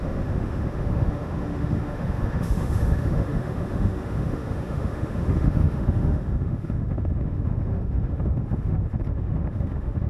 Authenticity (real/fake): fake